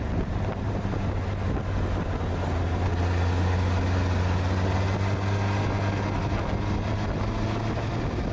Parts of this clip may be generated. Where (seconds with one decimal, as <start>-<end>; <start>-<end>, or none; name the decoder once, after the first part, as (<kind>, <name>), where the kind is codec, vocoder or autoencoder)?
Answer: none